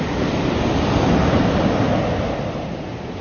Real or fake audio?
real